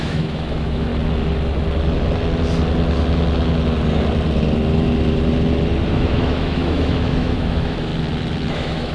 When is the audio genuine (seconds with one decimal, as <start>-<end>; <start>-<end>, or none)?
0.9-5.9; 7.9-8.5

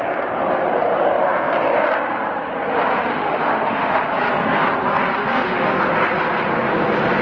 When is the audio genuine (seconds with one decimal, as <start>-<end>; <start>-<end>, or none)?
0.0-3.1; 4.0-5.2; 5.8-7.2

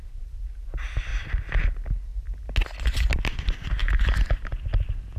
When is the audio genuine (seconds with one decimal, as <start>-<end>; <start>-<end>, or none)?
0.0-5.2

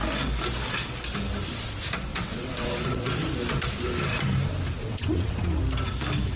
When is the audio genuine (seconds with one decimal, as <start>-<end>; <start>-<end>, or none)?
0.0-2.1; 3.1-4.8; 5.6-6.4